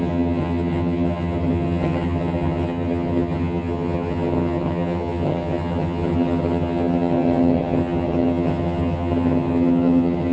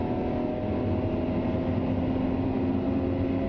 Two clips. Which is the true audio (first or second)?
second